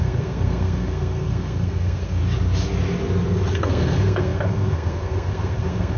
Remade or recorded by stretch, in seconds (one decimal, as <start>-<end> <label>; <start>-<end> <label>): 0.0-2.2 remade; 2.2-3.5 recorded; 3.5-6.0 remade